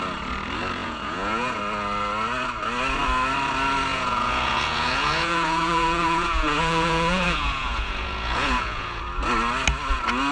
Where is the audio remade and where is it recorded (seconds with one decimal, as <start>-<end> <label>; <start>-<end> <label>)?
0.0-0.8 recorded; 0.8-1.6 remade; 1.6-3.9 recorded; 3.9-9.0 remade; 9.0-10.3 recorded